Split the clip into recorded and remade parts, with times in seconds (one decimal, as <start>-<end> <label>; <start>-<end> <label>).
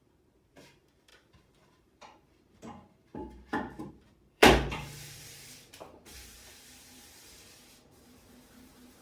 0.0-9.0 remade